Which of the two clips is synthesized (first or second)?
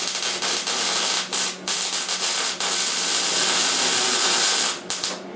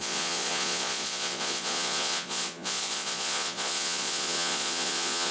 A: second